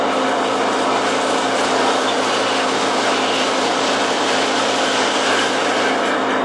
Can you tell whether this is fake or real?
real